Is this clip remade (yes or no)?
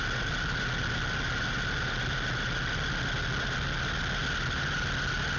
no